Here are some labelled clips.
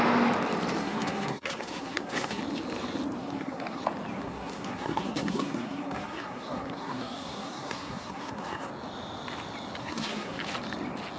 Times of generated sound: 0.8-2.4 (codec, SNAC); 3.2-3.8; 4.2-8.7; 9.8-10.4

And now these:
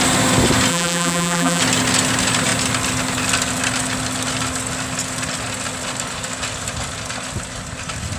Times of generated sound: 0.7-1.6 (vocoder, BigVGAN v2)

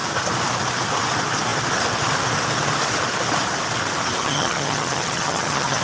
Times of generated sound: 4.2-5.8 (vocoder, HiFi-GAN)

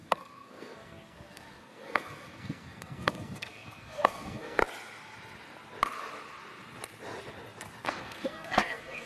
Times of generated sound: 0.0-4.6 (codec, SNAC); 7.8-9.1

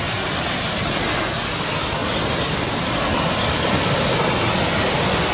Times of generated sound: none

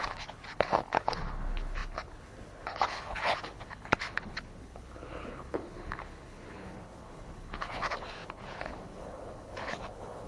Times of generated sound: 0.0-10.3 (codec, HILCodec)

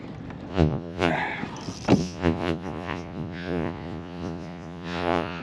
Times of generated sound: 0.5-1.1 (vocoder, Vocos); 2.0-5.4